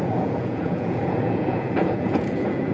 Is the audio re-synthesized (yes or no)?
yes